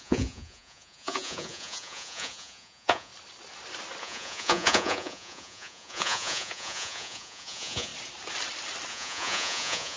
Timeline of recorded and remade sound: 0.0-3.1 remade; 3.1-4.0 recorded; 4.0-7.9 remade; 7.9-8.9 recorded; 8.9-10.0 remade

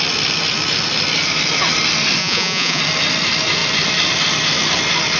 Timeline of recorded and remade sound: 0.0-2.2 recorded; 2.2-2.8 remade; 2.8-5.2 recorded

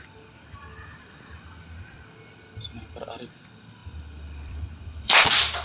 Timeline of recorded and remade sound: 0.0-5.6 remade